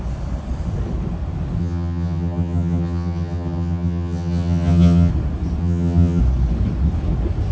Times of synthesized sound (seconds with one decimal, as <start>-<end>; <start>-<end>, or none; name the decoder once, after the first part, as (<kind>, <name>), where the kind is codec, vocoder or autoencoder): 1.6-5.1 (vocoder, HiFi-GAN); 5.6-6.2